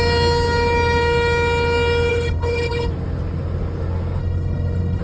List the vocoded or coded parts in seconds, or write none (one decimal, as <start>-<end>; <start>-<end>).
2.1-2.9; 4.2-5.0